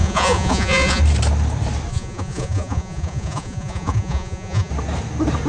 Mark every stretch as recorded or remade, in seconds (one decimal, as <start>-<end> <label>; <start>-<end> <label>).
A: 0.0-1.0 remade; 1.0-1.9 recorded; 1.9-4.7 remade; 4.7-5.5 recorded